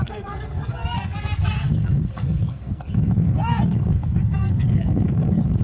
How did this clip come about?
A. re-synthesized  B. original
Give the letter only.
A